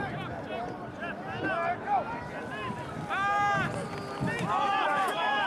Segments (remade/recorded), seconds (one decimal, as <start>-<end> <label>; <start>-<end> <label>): 0.0-4.9 recorded; 4.9-5.5 remade